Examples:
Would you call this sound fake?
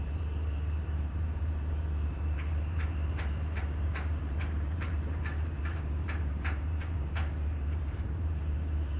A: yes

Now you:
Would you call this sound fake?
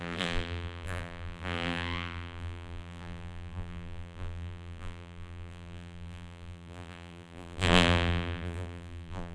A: yes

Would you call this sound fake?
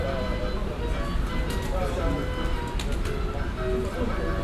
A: no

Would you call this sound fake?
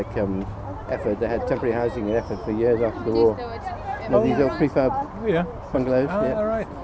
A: no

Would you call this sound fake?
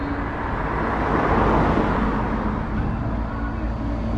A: no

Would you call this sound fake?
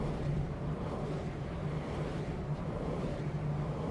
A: yes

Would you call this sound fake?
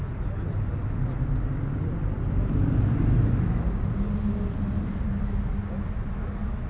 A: no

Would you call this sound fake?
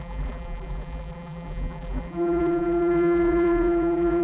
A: yes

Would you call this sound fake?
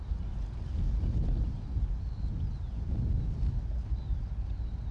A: no